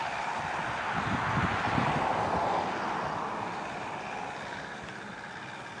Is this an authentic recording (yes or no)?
yes